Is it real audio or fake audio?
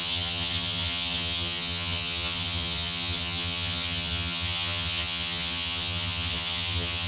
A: fake